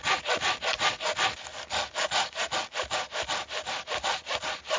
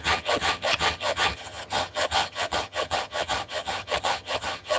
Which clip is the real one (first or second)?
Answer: first